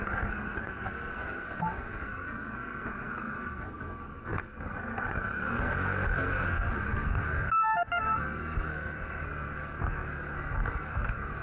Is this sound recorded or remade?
remade